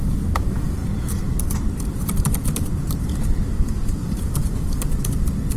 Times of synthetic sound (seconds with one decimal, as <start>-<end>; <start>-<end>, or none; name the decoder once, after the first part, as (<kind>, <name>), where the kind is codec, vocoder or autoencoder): 0.8-4.2 (vocoder, BigVGAN v2)